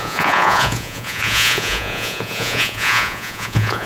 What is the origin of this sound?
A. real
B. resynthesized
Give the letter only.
B